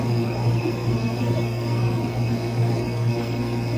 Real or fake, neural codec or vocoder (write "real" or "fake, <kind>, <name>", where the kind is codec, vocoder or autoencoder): fake, codec, SNAC